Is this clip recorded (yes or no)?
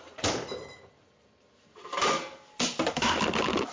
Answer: no